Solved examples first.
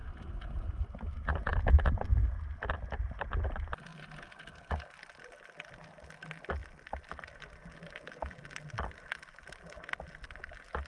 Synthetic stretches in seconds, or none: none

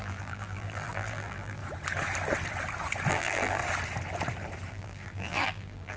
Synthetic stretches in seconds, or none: 0.0-1.6 (vocoder, BigVGAN v2); 3.1-3.6; 4.7-6.0